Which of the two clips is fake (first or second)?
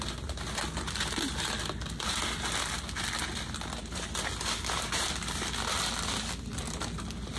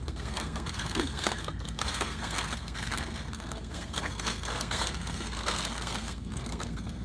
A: second